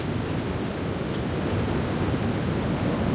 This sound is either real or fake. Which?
real